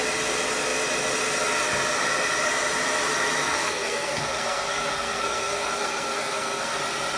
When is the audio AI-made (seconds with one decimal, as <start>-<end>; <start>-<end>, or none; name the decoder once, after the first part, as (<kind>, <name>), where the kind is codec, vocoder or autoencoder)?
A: 3.4-6.8 (codec, SNAC)